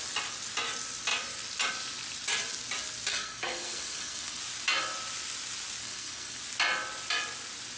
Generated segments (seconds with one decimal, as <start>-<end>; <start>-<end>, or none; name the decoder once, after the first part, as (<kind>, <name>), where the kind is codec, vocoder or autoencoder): 3.1-4.4 (codec, SNAC); 5.8-6.4